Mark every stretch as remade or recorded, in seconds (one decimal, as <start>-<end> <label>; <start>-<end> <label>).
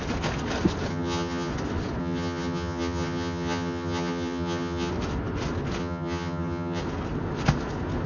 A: 0.0-0.9 recorded; 0.9-1.5 remade; 1.5-2.0 recorded; 2.0-4.9 remade; 4.9-5.8 recorded; 5.8-6.8 remade; 6.8-8.1 recorded